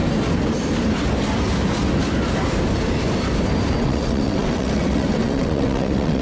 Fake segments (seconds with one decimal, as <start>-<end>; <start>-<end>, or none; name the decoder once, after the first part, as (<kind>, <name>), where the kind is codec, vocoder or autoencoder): 3.7-6.2 (vocoder, WaveNeXt)